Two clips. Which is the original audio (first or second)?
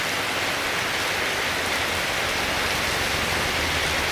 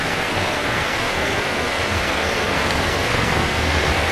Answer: first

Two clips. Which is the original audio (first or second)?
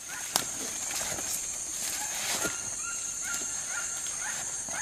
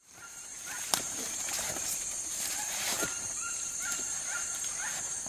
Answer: first